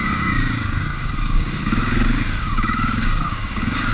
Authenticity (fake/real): fake